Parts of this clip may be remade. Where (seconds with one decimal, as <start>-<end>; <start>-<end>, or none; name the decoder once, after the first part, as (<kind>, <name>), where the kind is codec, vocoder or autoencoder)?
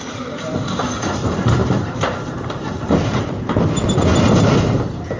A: 1.6-3.2 (vocoder, BigVGAN v2)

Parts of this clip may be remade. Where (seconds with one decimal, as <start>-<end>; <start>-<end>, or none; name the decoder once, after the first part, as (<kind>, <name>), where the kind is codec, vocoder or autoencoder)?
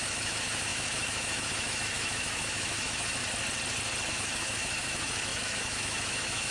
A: 0.0-3.2 (autoencoder, DAC-VAE); 4.1-6.5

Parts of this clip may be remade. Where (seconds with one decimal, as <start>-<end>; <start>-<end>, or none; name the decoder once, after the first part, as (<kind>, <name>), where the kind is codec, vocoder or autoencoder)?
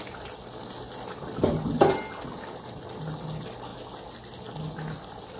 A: none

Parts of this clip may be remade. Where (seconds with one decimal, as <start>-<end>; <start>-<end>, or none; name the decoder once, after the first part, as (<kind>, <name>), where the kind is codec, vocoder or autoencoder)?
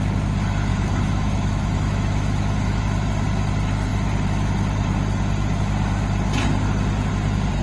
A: 0.7-2.8 (autoencoder, DAC-VAE)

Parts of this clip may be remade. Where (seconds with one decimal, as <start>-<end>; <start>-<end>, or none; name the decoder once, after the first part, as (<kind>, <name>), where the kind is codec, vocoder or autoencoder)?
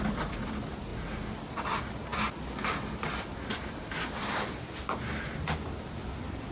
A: 0.0-0.9 (vocoder, BigVGAN v2); 1.7-2.1; 2.7-6.5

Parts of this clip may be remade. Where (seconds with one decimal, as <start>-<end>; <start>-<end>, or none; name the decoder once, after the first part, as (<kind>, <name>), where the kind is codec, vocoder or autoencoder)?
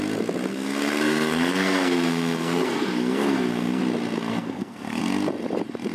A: 0.5-3.8 (codec, SNAC); 4.3-5.0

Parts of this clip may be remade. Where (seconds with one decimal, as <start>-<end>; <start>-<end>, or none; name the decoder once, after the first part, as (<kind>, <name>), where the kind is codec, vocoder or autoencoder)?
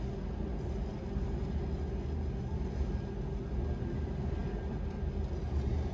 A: none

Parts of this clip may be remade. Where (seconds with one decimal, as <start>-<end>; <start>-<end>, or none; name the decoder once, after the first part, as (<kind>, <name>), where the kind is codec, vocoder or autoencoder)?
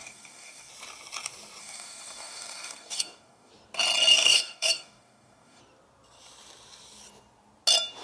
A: 0.0-0.7 (codec, DAC); 1.6-3.5; 4.1-5.6